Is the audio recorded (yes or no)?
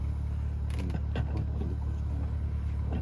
yes